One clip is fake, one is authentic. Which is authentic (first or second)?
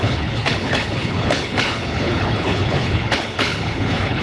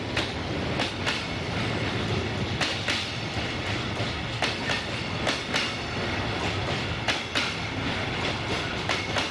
second